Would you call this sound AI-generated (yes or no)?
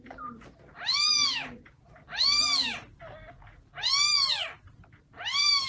no